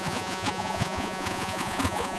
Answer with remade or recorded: remade